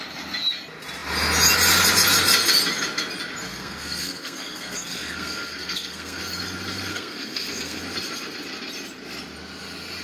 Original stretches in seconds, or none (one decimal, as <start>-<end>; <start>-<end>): 0.0-3.5; 6.2-6.9; 7.8-10.0